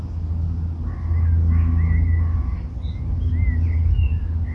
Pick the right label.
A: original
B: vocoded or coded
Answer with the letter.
A